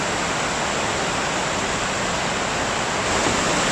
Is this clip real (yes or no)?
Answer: yes